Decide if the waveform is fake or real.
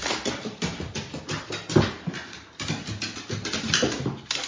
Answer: real